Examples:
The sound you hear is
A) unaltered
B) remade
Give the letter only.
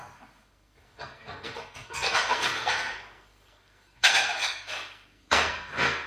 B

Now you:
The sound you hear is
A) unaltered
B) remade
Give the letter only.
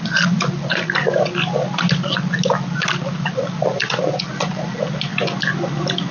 A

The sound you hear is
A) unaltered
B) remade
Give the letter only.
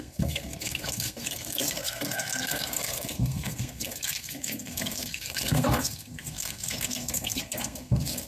B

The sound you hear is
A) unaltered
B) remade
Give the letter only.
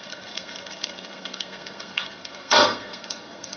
B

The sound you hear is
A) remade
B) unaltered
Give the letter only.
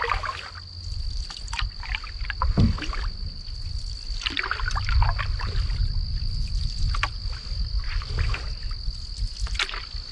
B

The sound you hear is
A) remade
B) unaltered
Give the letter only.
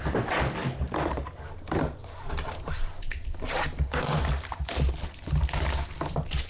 B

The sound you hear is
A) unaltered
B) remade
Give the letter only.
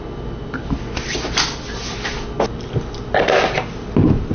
A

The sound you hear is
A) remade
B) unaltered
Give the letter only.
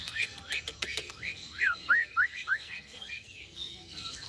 A